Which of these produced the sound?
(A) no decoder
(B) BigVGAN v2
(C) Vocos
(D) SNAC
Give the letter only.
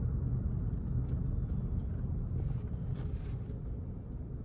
A